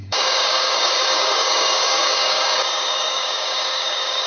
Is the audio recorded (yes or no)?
no